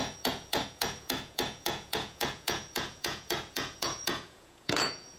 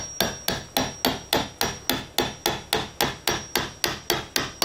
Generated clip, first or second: first